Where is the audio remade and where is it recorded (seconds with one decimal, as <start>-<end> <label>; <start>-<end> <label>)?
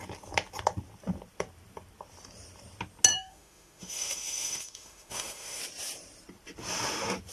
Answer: 0.0-3.1 recorded; 3.1-5.6 remade; 5.6-7.3 recorded